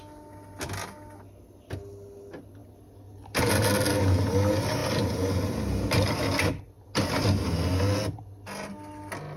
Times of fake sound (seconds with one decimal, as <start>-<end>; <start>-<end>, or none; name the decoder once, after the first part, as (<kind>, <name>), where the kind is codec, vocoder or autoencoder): none

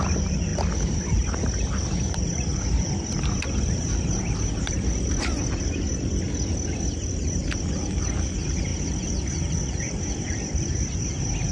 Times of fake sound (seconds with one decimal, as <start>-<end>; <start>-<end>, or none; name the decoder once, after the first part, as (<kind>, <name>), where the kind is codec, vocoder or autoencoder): none

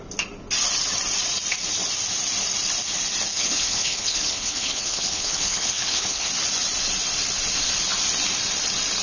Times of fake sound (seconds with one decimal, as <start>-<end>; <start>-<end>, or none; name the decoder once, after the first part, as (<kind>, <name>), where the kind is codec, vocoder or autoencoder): 3.3-6.3 (codec, HILCodec)

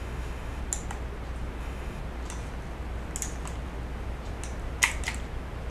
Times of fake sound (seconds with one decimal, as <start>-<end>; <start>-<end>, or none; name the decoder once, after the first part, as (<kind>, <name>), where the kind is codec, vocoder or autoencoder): 0.0-0.6 (autoencoder, DAC-VAE); 1.6-2.0

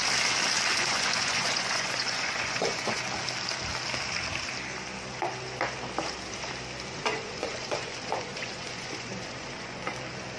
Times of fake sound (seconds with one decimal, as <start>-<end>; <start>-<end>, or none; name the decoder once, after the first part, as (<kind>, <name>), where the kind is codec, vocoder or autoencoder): 0.7-3.0 (vocoder, Vocos); 6.9-9.9

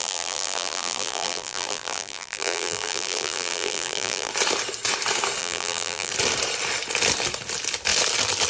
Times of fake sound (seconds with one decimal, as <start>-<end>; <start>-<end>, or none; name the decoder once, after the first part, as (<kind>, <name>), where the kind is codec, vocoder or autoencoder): 0.0-4.3 (vocoder, BigVGAN v2); 5.4-6.1

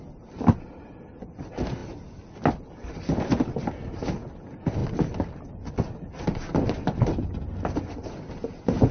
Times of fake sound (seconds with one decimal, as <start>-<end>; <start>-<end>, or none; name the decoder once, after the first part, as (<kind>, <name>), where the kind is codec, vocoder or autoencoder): none

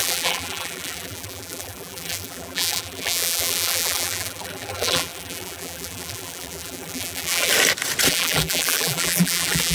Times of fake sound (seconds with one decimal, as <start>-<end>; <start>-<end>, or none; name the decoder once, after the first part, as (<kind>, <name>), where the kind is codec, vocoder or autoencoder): 0.0-7.5 (vocoder, BigVGAN v2); 8.1-9.7